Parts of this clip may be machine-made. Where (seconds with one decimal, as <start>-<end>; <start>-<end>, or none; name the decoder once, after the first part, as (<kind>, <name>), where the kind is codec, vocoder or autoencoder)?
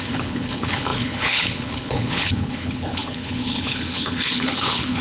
0.0-5.0 (codec, HILCodec)